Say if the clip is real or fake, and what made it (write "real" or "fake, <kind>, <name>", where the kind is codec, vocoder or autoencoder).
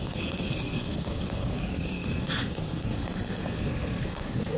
fake, codec, SNAC